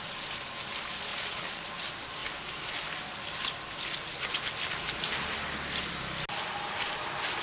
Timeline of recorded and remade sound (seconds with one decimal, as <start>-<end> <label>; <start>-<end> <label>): 0.0-1.1 recorded; 1.1-1.6 remade; 1.6-7.4 recorded